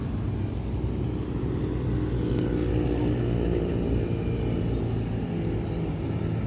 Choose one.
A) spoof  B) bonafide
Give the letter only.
B